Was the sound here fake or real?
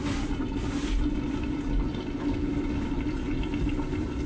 real